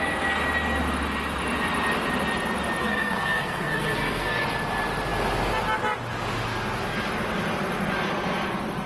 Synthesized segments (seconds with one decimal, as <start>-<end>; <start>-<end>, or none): 2.8-4.4